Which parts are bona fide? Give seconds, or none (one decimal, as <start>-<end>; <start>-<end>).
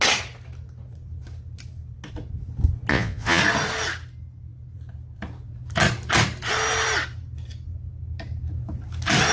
0.0-2.9; 3.4-9.3